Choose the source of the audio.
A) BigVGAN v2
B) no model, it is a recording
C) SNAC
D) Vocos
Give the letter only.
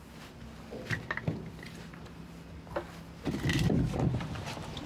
B